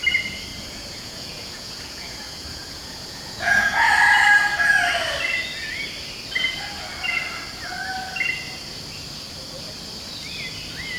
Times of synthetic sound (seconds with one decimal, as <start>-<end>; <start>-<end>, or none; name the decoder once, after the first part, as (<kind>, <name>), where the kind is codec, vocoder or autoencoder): 0.5-3.9 (vocoder, Vocos)